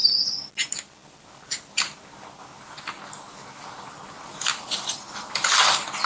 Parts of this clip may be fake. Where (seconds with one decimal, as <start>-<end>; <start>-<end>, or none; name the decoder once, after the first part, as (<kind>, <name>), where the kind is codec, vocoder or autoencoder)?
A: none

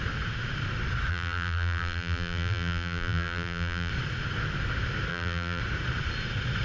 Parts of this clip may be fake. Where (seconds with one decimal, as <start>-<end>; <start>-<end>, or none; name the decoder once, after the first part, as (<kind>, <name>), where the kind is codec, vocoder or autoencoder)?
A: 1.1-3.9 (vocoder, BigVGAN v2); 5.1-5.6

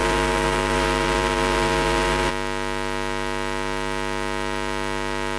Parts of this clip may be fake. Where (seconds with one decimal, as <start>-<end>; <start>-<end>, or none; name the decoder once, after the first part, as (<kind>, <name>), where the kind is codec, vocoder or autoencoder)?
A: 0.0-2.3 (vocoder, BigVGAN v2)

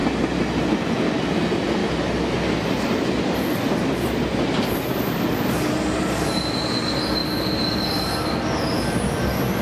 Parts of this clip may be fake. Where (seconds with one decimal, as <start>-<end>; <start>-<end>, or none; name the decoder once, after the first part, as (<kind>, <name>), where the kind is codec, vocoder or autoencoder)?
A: 7.2-8.4 (vocoder, BigVGAN v2)

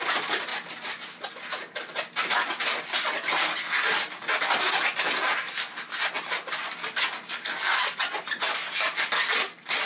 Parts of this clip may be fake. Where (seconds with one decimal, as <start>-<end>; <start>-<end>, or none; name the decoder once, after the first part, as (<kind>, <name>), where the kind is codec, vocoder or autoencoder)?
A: none

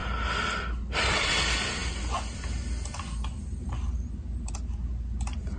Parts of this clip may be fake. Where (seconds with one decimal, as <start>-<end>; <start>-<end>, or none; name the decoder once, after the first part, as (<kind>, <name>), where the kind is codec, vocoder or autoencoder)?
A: none

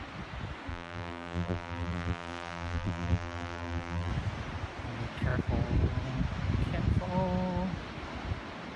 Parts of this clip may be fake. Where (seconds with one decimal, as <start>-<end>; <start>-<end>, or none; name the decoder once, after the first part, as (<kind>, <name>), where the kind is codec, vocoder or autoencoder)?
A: 0.7-4.1 (vocoder, BigVGAN v2)